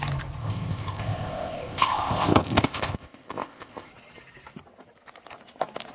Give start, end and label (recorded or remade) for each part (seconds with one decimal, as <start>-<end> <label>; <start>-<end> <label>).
0.0-0.4 recorded; 0.4-3.9 remade; 3.9-5.9 recorded